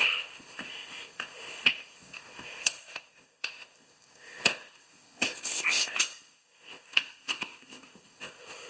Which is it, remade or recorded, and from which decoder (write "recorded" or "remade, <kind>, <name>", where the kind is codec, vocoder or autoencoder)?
remade, codec, ZipCodec